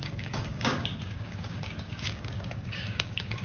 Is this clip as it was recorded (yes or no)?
no